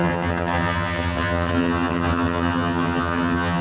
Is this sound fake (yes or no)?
yes